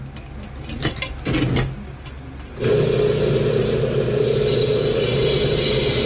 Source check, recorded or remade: recorded